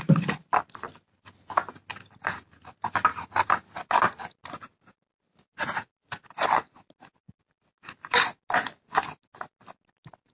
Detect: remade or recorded recorded